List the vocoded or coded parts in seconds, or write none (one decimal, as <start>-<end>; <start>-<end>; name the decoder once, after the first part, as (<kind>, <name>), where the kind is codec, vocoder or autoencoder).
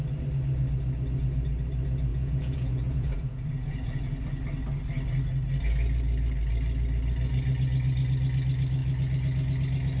2.1-4.0 (vocoder, Vocos)